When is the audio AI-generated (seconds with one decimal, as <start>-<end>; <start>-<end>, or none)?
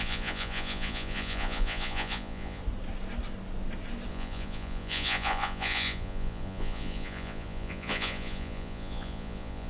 0.0-2.6; 4.1-9.7